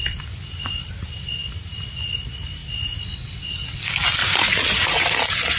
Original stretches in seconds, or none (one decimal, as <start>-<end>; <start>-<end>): 0.0-4.2; 5.1-5.6

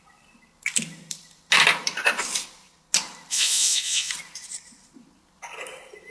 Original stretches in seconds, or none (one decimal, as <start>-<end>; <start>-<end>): 0.0-3.3; 4.1-6.1

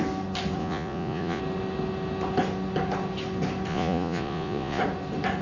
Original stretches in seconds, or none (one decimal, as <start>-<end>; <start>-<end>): 0.0-0.6; 1.4-3.7; 4.8-5.4

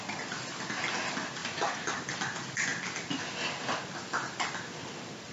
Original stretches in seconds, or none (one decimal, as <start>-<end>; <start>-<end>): 0.0-5.3